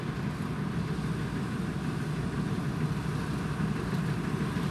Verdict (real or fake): real